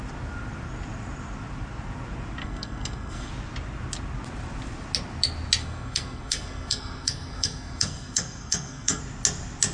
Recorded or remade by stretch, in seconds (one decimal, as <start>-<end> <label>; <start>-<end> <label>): 0.0-2.4 recorded; 2.4-3.3 remade; 3.3-5.6 recorded; 5.6-9.0 remade; 9.0-9.7 recorded